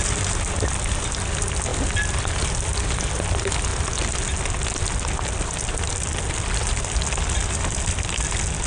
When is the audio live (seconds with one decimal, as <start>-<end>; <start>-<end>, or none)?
0.0-8.7